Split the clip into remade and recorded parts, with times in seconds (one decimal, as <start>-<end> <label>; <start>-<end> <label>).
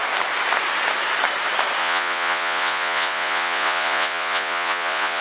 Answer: 0.0-1.8 recorded; 1.8-5.2 remade